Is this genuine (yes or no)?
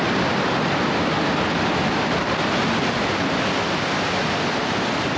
yes